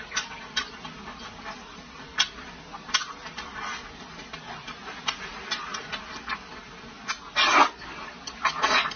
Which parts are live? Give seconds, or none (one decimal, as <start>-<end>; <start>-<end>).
0.0-9.0

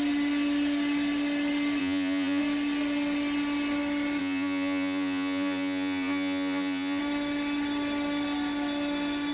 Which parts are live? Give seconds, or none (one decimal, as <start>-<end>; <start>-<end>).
0.0-1.8; 2.4-4.2; 7.0-9.3

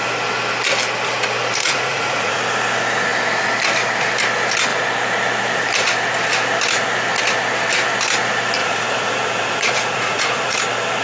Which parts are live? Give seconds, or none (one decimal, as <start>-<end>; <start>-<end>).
0.0-1.6; 2.4-8.6; 10.6-11.0

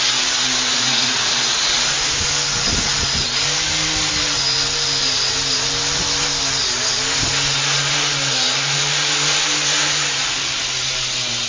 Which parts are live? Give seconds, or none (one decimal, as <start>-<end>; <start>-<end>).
0.0-0.7; 1.3-11.5

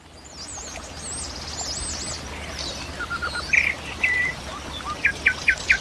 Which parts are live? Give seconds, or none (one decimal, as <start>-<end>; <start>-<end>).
0.0-5.8